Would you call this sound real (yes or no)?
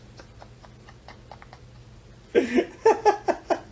yes